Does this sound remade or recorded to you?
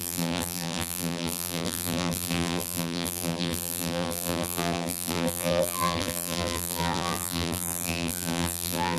remade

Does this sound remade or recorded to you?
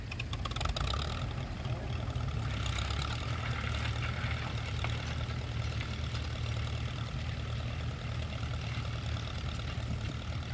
recorded